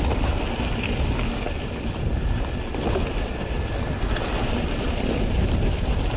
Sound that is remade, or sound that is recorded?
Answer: recorded